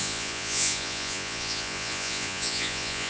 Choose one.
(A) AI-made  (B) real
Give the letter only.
A